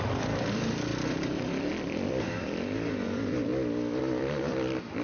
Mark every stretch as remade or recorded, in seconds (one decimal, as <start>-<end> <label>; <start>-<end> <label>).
0.0-0.9 remade; 0.9-2.1 recorded; 2.1-3.5 remade; 3.5-4.0 recorded; 4.0-5.0 remade